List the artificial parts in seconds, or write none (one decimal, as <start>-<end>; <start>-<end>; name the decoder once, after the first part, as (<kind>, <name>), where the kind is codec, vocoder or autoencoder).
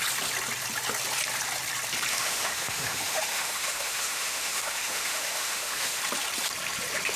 2.1-6.0 (autoencoder, DAC-VAE)